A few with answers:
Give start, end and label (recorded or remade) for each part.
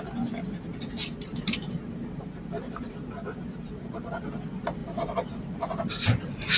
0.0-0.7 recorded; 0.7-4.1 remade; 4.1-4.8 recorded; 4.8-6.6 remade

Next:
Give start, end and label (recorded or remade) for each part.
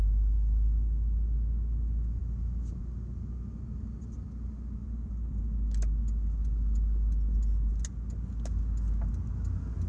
0.0-4.8 recorded; 4.8-5.4 remade; 5.4-9.9 recorded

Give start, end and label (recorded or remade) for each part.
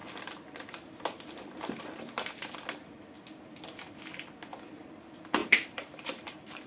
0.0-5.4 recorded; 5.4-6.7 remade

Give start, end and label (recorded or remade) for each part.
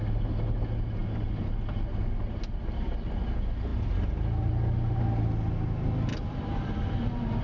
0.0-6.1 recorded; 6.1-6.7 remade; 6.7-7.4 recorded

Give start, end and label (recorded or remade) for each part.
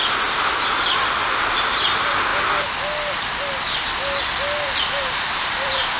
0.0-0.6 recorded; 0.6-2.3 remade; 2.3-4.8 recorded; 4.8-6.0 remade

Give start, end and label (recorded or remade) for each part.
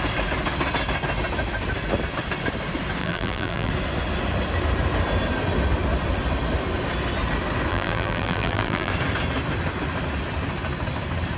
0.0-3.0 recorded; 3.0-3.7 remade; 3.7-7.7 recorded; 7.7-8.9 remade; 8.9-11.4 recorded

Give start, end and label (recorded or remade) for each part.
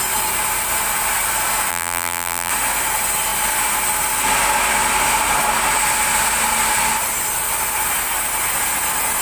0.0-1.7 recorded; 1.7-2.5 remade; 2.5-9.2 recorded